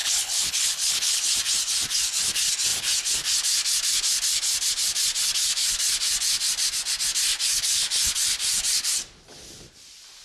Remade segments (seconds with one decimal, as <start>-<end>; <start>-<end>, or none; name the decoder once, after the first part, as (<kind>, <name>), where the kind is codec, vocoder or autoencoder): 0.0-1.2 (codec, HILCodec)